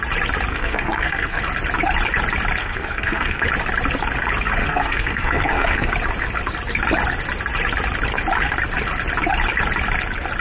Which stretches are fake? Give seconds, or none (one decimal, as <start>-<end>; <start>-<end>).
0.5-1.4; 2.6-3.4; 4.6-5.9